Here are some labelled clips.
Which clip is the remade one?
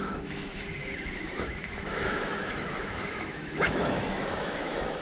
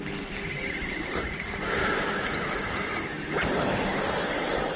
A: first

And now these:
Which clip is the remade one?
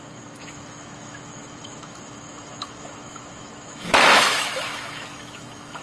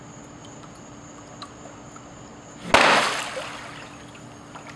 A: first